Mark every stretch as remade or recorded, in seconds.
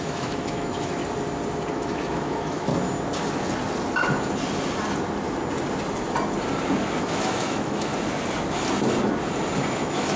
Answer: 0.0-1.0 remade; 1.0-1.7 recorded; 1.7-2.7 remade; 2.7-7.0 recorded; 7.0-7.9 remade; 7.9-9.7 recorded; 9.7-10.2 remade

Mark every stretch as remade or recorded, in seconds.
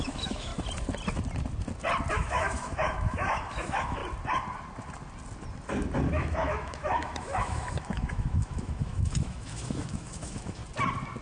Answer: 0.0-0.5 remade; 0.5-2.1 recorded; 2.1-4.0 remade; 4.0-6.1 recorded; 6.1-10.6 remade; 10.6-11.2 recorded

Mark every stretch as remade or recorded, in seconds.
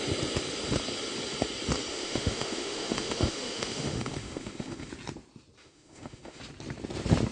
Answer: 0.0-1.9 recorded; 1.9-4.9 remade; 4.9-5.6 recorded; 5.6-6.4 remade; 6.4-7.3 recorded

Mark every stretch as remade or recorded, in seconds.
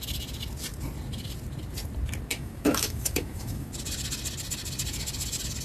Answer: 0.0-2.3 recorded; 2.3-3.7 remade; 3.7-5.6 recorded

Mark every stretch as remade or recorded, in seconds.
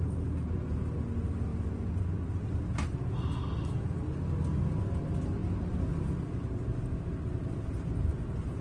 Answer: 0.0-8.6 recorded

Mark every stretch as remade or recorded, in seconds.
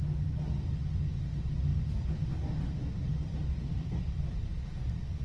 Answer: 0.0-5.2 recorded